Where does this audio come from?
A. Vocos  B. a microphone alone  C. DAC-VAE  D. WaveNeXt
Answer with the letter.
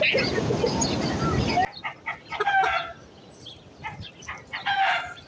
B